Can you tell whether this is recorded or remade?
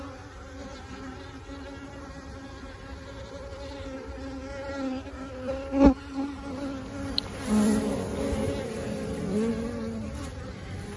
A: recorded